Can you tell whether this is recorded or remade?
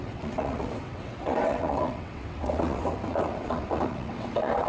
remade